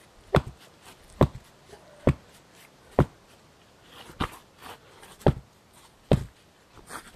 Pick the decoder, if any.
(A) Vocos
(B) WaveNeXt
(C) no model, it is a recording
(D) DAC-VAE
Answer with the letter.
C